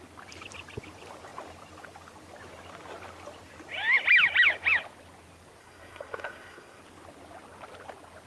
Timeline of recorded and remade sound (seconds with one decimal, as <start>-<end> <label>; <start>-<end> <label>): 0.0-5.6 recorded; 5.6-6.8 remade; 6.8-8.3 recorded